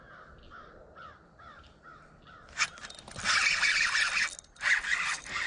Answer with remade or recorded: recorded